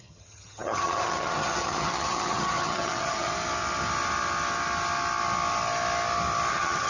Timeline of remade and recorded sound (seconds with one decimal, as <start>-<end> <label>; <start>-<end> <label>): 0.0-3.3 remade; 3.3-6.5 recorded; 6.5-6.9 remade